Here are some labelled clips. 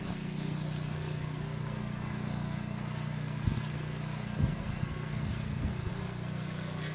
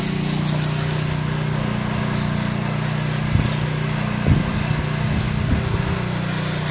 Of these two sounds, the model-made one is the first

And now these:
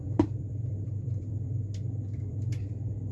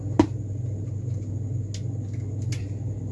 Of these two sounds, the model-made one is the first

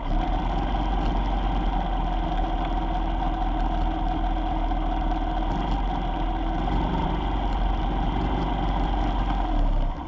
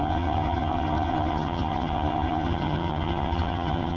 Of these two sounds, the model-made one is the second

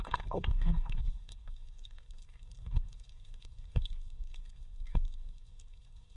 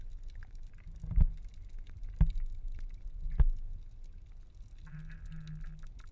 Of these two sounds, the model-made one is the first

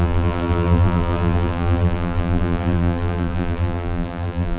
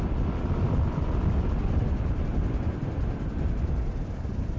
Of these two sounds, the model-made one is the first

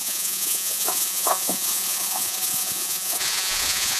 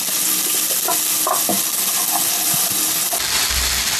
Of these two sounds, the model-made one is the first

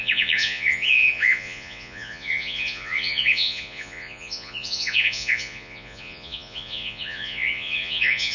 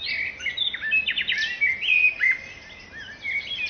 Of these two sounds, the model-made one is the first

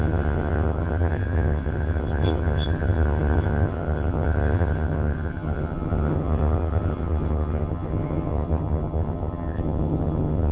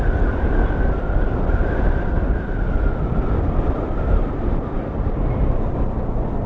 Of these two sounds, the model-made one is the first